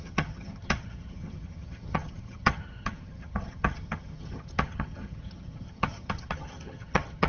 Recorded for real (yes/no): no